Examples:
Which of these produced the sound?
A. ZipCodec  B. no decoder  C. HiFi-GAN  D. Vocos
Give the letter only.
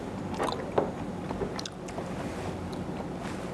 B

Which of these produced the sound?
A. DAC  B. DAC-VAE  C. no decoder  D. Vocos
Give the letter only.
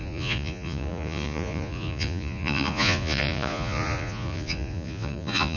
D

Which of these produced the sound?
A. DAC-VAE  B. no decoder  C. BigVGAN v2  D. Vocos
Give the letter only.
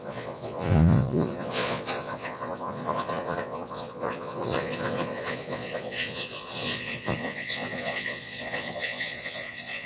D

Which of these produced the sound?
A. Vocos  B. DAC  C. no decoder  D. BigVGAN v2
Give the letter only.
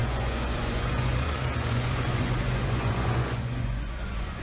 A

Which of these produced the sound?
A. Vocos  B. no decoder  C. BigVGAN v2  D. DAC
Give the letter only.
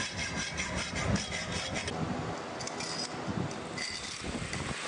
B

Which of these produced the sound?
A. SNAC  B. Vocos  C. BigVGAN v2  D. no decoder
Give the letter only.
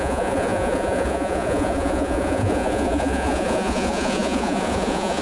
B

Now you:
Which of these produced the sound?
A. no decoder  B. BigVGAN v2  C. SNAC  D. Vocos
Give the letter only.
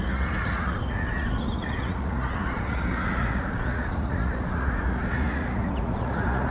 D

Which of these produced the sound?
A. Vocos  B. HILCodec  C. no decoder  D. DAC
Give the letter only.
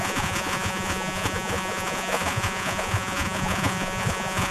A